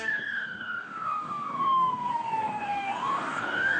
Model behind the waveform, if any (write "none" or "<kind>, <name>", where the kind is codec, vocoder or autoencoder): codec, DAC